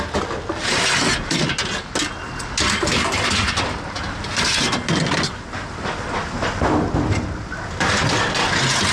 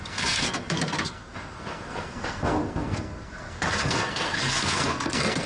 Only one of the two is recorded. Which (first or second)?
first